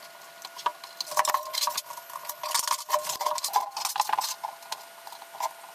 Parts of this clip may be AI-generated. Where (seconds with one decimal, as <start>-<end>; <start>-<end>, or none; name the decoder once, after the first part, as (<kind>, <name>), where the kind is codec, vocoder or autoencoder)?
none